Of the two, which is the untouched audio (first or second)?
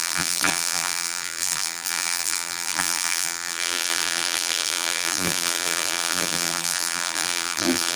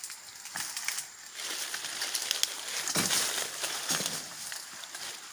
second